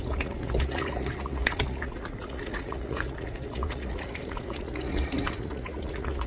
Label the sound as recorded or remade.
remade